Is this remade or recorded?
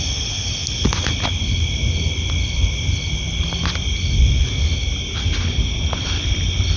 recorded